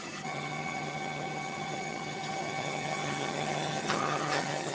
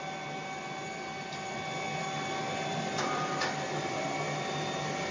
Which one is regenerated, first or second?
first